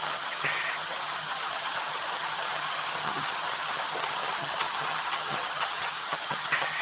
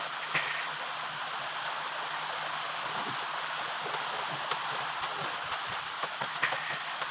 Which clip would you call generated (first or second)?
first